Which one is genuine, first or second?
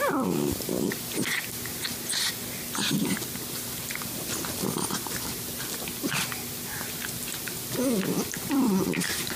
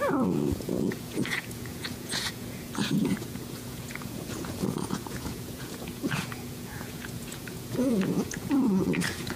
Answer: first